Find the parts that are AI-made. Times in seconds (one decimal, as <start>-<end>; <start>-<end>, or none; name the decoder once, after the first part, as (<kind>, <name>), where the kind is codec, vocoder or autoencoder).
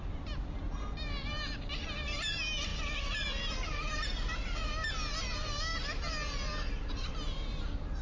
none